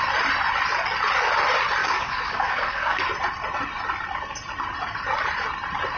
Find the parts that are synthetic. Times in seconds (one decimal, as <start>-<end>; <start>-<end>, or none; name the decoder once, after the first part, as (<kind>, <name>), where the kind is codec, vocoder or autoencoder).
1.8-3.0 (codec, DAC)